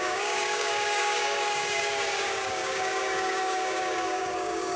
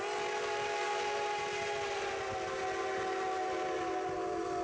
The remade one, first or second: first